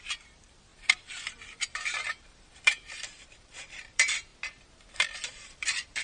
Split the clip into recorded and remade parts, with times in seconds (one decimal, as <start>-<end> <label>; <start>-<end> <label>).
0.0-4.3 remade; 4.3-4.9 recorded; 4.9-6.0 remade